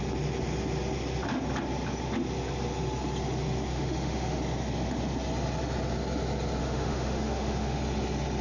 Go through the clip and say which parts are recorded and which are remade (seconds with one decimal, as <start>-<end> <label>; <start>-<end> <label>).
0.0-3.7 recorded; 3.7-4.4 remade; 4.4-6.6 recorded; 6.6-7.8 remade; 7.8-8.4 recorded